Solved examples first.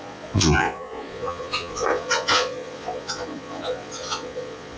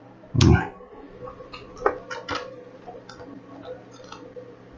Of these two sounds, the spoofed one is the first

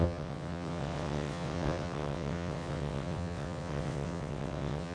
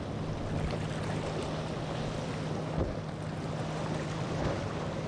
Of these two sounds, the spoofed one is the first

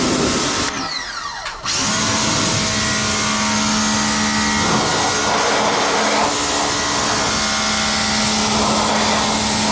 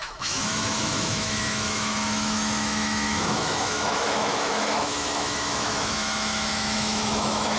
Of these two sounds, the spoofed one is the second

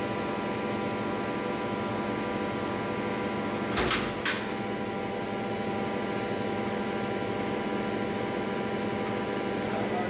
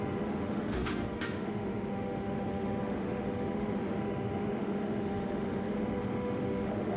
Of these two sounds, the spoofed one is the second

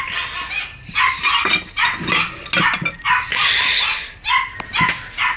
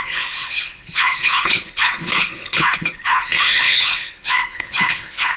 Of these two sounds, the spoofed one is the second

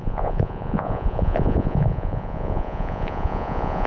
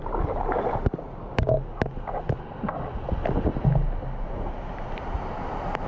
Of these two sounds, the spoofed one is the first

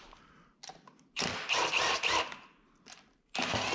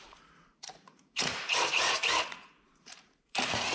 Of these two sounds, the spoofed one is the second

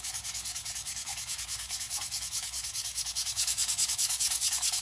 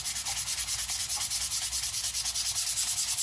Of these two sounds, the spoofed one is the first